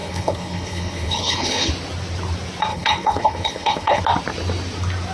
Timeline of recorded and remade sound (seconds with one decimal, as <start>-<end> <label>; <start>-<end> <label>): 0.0-1.7 remade; 1.7-2.7 recorded; 2.7-4.0 remade; 4.0-5.1 recorded